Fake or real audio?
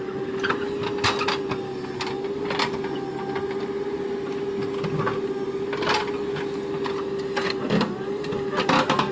real